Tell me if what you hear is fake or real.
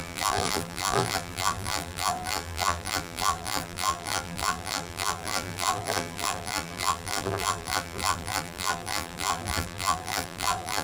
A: fake